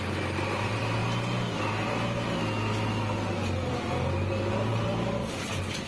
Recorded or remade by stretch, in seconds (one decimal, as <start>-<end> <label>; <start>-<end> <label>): 0.0-1.0 remade; 1.0-4.5 recorded; 4.5-5.9 remade